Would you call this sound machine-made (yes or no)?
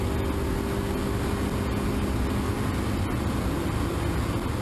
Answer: no